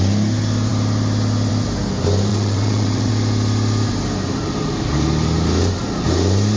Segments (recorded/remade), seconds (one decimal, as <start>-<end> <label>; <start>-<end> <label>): 0.0-2.3 recorded; 2.3-3.1 remade; 3.1-6.6 recorded